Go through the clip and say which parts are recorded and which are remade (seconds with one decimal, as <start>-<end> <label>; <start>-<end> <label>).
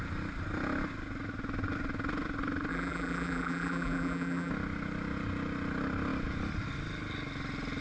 0.0-2.7 recorded; 2.7-4.5 remade; 4.5-7.8 recorded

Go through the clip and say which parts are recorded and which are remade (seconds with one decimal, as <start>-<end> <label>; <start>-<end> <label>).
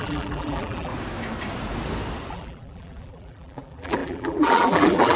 0.0-0.9 remade; 0.9-2.3 recorded; 2.3-5.2 remade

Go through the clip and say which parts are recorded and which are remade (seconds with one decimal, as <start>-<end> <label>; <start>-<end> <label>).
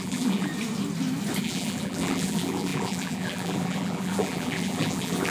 0.0-0.5 remade; 0.5-1.4 recorded; 1.4-5.3 remade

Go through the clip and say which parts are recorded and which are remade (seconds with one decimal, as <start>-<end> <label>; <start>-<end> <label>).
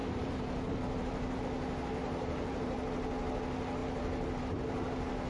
0.0-1.4 remade; 1.4-2.0 recorded; 2.0-2.8 remade; 2.8-3.8 recorded; 3.8-4.4 remade; 4.4-5.3 recorded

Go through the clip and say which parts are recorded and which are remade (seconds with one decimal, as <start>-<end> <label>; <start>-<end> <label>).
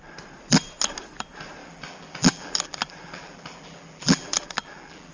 0.0-1.6 recorded; 1.6-5.1 remade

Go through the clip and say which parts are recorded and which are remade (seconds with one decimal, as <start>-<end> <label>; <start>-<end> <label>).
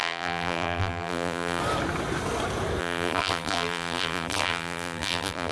0.0-1.6 remade; 1.6-2.8 recorded; 2.8-5.5 remade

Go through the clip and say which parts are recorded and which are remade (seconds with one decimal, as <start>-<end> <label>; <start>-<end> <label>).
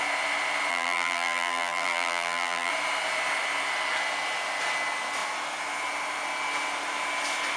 0.0-0.7 recorded; 0.7-2.7 remade; 2.7-7.6 recorded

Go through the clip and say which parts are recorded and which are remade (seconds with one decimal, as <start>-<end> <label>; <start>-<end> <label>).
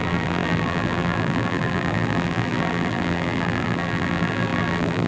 0.0-5.1 remade